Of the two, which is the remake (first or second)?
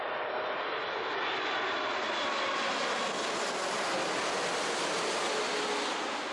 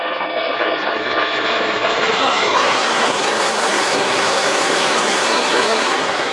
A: second